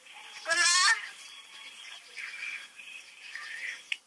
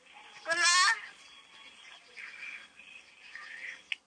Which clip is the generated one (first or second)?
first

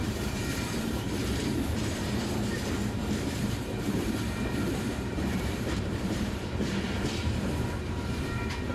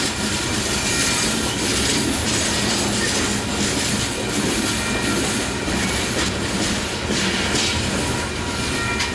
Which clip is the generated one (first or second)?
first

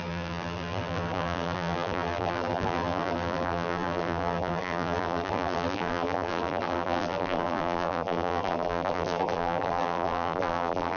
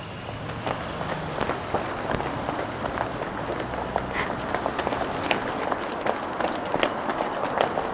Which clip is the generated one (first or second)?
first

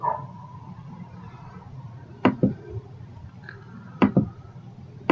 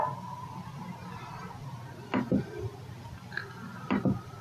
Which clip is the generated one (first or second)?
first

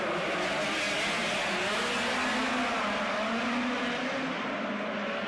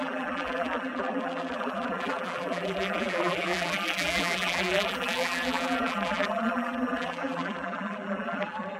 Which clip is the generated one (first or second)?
second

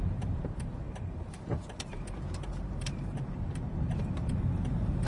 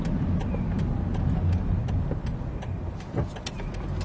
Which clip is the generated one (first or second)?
first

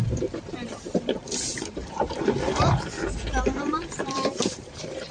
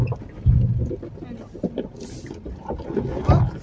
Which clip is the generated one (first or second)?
first